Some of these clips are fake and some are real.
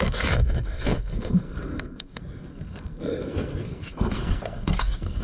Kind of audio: fake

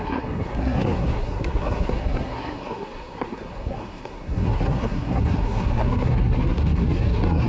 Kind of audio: fake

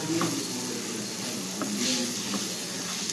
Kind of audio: real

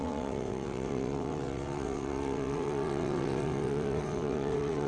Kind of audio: fake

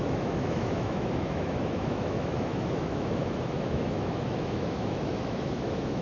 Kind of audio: fake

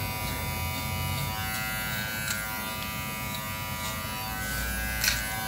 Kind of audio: real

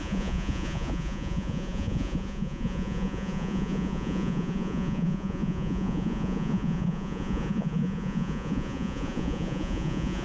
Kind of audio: fake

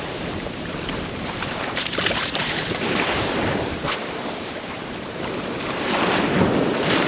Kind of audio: fake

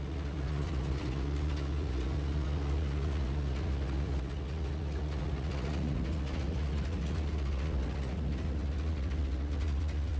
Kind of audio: fake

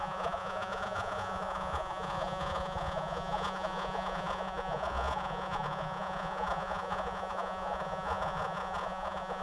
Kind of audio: fake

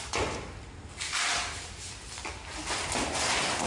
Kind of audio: real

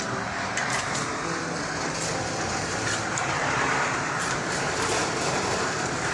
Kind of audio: fake